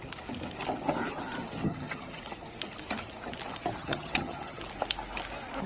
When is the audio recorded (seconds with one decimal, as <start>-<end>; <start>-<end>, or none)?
0.0-1.6; 2.2-3.8; 4.6-5.7